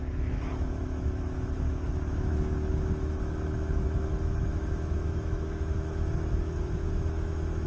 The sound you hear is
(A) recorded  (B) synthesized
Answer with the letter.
B